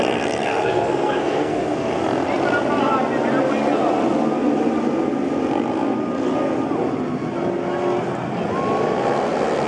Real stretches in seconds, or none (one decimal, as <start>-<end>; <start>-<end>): 0.0-0.4; 2.0-9.7